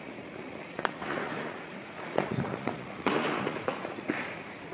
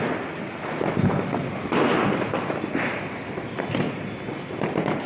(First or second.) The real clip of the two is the second